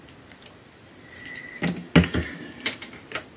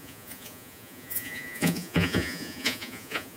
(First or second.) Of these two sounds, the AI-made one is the second